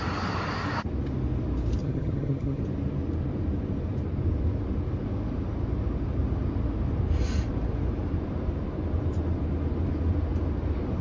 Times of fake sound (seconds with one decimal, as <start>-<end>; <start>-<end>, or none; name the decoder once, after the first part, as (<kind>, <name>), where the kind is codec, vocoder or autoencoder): 1.8-2.6 (vocoder, HiFi-GAN)